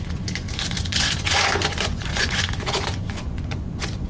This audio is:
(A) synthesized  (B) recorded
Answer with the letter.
A